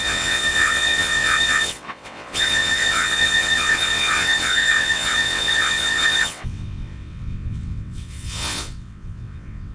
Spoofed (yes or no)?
yes